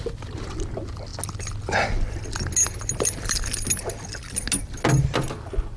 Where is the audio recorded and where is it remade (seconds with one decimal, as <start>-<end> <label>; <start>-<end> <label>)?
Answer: 0.0-5.8 recorded